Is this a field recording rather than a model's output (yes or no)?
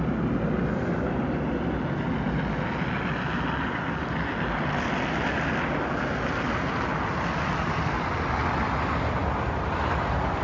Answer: yes